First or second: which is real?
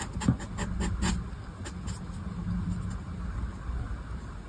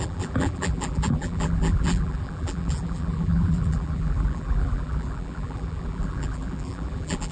first